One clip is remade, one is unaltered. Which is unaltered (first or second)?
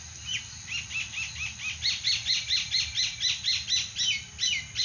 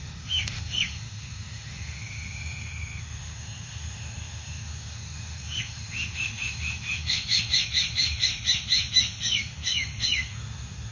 first